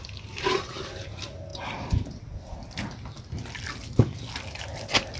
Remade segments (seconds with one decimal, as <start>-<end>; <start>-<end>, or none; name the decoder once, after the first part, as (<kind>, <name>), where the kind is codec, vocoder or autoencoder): none